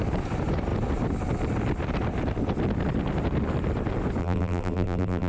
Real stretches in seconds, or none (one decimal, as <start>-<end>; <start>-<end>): 0.0-4.2